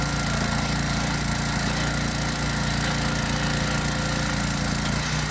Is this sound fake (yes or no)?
no